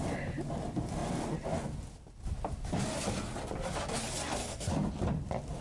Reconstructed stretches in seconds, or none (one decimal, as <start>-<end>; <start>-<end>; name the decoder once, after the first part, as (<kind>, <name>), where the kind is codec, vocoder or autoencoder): 4.4-4.9 (codec, SNAC)